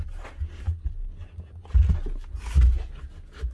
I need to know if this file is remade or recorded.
recorded